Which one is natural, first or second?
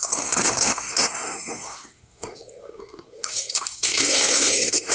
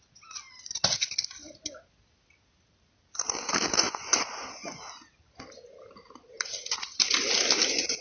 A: second